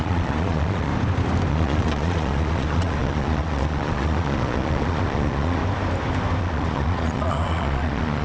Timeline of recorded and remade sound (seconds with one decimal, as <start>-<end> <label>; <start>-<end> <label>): 0.0-0.9 remade; 0.9-1.5 recorded; 1.5-5.6 remade; 5.6-6.4 recorded; 6.4-8.2 remade